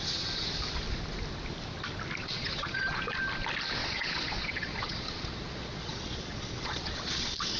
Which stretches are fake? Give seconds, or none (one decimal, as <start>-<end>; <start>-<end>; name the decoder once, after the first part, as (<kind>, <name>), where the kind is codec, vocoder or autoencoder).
2.2-3.0 (vocoder, Vocos); 3.8-7.6